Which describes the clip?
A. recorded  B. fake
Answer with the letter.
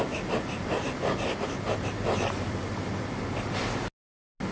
A